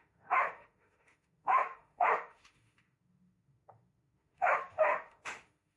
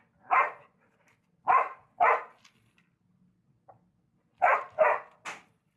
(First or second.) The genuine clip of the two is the second